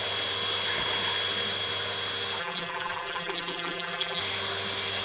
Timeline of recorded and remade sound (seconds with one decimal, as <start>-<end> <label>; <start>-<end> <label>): 0.0-2.4 recorded; 2.4-4.2 remade; 4.2-5.0 recorded